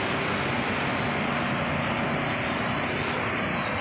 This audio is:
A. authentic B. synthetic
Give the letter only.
A